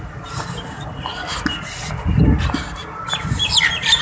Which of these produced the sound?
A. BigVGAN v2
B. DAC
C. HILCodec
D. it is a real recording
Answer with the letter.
D